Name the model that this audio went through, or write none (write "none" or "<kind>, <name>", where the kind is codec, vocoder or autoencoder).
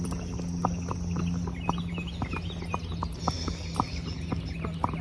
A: none